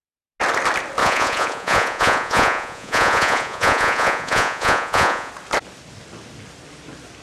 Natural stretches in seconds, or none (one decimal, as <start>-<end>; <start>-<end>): 0.0-1.0; 5.3-7.2